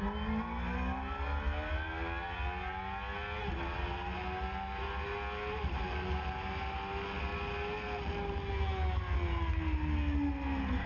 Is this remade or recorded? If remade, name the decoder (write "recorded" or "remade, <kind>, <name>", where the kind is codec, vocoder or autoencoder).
recorded